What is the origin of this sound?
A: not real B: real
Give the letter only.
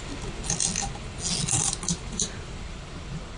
B